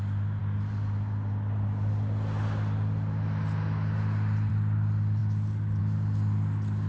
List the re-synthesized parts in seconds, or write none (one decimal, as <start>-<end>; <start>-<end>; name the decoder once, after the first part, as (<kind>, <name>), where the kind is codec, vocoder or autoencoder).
none